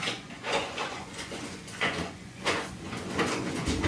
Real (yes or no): no